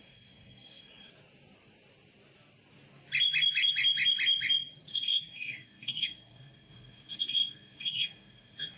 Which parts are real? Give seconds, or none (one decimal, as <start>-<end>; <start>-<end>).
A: 1.1-4.9